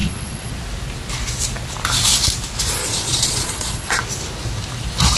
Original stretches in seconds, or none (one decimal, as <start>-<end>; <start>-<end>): 0.5-2.8; 4.0-5.2